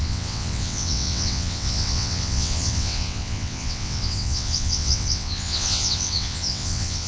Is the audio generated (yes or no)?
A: yes